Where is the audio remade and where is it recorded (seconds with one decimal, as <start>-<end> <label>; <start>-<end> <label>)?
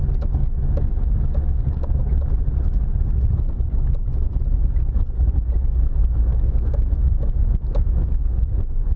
0.0-0.4 recorded; 0.4-1.9 remade; 1.9-6.3 recorded; 6.3-7.4 remade; 7.4-9.0 recorded